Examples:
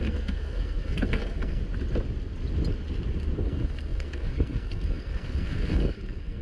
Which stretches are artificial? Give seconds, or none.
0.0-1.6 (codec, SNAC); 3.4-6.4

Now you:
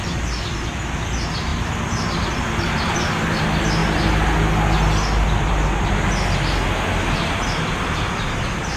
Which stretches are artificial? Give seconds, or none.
none